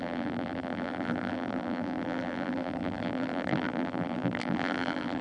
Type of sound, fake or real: fake